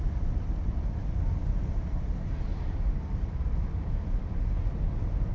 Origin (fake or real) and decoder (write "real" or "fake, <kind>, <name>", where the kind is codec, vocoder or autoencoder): real